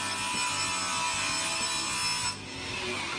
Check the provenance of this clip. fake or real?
real